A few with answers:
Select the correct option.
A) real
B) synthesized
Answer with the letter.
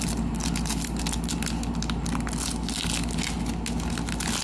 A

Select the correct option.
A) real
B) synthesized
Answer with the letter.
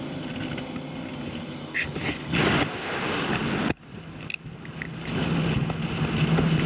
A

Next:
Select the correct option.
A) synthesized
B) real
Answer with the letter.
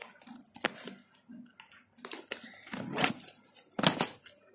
B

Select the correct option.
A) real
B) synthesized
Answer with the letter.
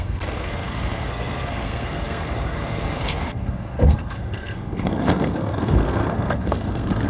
B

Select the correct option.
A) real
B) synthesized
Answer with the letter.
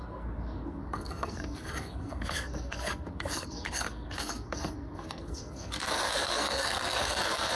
B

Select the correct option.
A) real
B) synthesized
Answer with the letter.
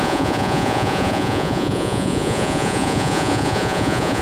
B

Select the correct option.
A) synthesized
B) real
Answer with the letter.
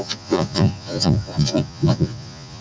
A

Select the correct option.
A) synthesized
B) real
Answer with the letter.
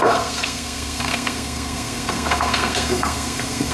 A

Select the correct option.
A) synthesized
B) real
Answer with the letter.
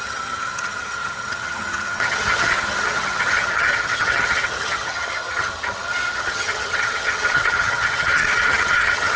A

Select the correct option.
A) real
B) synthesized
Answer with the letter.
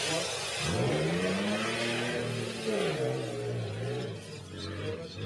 A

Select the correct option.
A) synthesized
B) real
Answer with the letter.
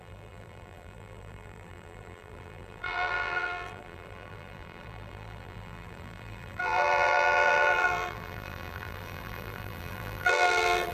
A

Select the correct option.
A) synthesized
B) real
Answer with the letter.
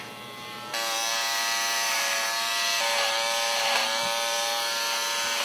A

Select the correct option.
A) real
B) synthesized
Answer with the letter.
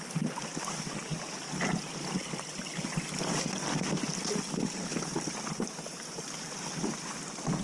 A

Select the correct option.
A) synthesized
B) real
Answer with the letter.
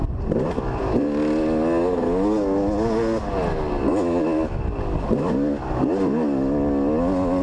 B